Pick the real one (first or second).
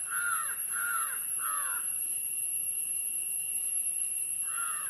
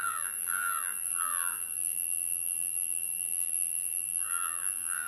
first